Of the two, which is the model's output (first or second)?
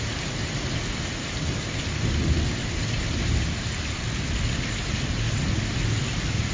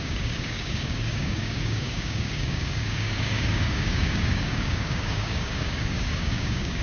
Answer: second